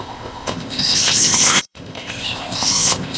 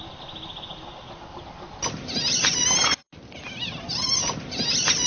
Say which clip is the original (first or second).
second